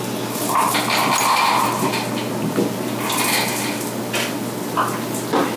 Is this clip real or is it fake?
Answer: real